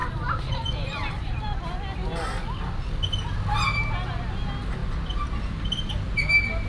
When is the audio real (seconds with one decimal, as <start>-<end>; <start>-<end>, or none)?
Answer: 1.1-4.8; 5.7-6.7